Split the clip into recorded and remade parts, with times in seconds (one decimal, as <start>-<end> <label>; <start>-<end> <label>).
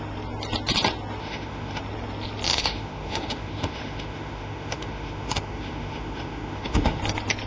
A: 0.0-1.2 recorded; 1.2-1.8 remade; 1.8-2.5 recorded; 2.5-7.0 remade; 7.0-7.5 recorded